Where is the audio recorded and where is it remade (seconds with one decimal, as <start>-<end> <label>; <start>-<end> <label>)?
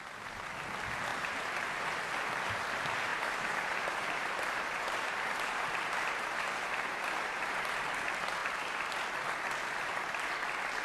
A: 0.0-1.1 recorded; 1.1-2.0 remade; 2.0-3.1 recorded; 3.1-7.9 remade; 7.9-10.8 recorded